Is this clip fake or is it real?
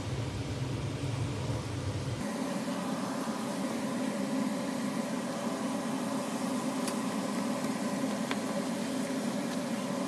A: real